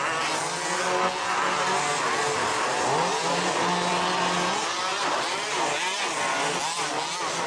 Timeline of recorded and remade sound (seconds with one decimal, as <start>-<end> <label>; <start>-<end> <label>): 0.0-7.5 recorded